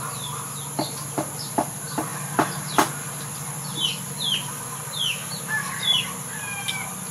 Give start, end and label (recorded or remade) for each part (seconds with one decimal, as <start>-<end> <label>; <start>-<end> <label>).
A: 0.0-7.1 recorded